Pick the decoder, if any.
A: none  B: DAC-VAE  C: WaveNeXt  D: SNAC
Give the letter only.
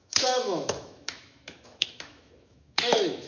B